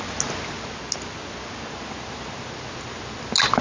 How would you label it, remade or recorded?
recorded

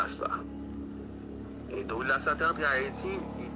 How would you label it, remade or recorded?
recorded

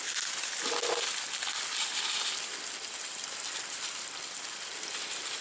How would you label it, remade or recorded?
recorded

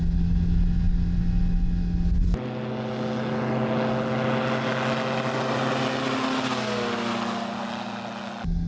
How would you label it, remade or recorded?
recorded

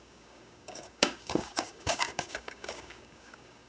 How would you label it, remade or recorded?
remade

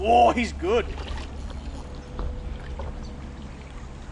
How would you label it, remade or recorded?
recorded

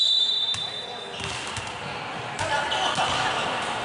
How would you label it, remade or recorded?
recorded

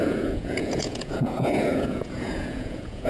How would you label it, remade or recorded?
remade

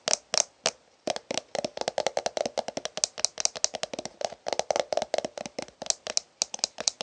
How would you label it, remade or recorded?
recorded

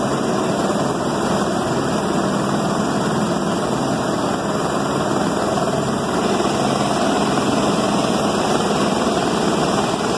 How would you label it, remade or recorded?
recorded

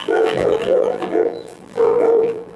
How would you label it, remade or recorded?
remade